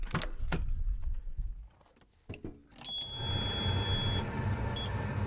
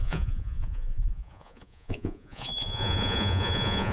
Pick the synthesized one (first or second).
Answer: second